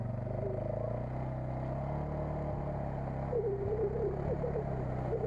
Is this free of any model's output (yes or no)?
yes